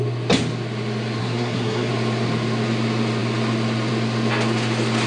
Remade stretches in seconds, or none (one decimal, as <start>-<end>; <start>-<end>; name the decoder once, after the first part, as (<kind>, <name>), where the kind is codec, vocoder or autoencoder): 1.2-1.9 (codec, SNAC)